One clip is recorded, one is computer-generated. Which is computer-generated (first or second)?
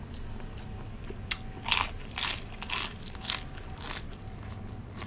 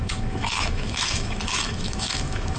second